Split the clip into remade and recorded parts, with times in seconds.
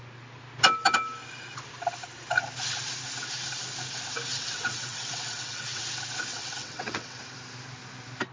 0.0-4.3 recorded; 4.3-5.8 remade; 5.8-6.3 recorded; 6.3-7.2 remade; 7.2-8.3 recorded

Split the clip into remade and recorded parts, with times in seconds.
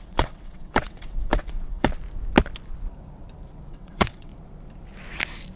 0.0-1.9 remade; 1.9-3.7 recorded; 3.7-4.3 remade; 4.3-5.6 recorded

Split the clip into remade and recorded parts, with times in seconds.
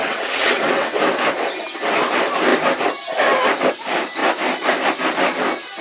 0.0-1.0 remade; 1.0-5.8 recorded